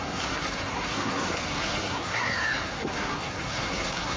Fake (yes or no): yes